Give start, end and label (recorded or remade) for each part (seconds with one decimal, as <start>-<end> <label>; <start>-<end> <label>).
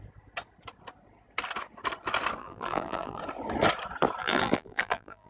0.0-2.4 recorded; 2.4-3.2 remade; 3.2-4.2 recorded; 4.2-5.3 remade